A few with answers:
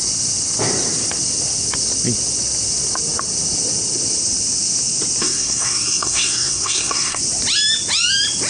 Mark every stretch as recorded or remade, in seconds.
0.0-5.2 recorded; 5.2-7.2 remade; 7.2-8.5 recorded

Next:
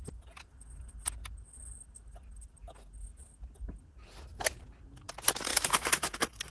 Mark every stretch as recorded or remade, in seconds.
0.0-5.5 recorded; 5.5-6.5 remade

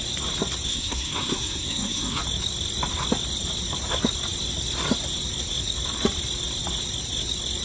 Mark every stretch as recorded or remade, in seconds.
0.0-0.7 recorded; 0.7-2.2 remade; 2.2-7.6 recorded

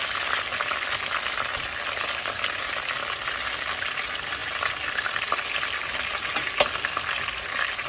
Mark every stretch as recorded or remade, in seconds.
0.0-7.9 recorded

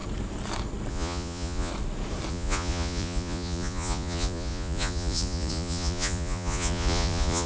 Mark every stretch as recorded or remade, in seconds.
0.0-0.9 recorded; 0.9-1.7 remade; 1.7-2.3 recorded; 2.3-7.5 remade

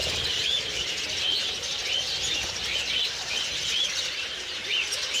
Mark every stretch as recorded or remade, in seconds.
0.0-0.9 remade; 0.9-5.2 recorded